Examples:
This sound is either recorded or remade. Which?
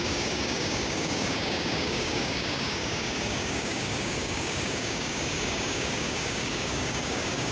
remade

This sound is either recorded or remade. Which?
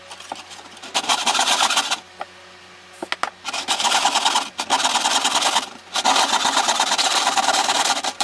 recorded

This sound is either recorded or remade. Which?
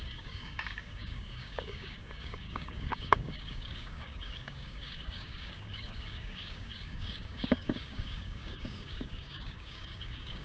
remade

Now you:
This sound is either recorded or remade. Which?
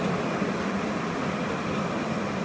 recorded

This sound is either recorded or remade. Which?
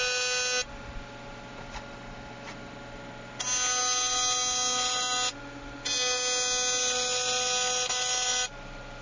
recorded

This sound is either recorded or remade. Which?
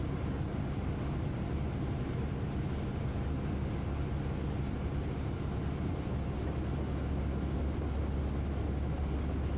recorded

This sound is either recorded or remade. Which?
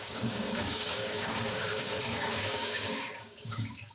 remade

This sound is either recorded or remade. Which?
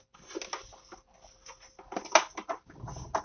recorded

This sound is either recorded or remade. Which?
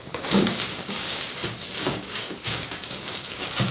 remade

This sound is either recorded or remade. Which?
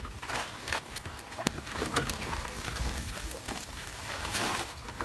remade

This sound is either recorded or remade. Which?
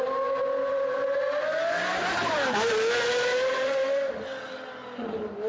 recorded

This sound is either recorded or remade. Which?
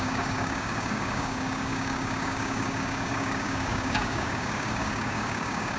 remade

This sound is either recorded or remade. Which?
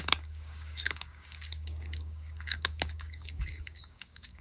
remade